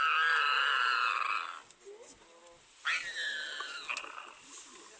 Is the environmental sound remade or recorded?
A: recorded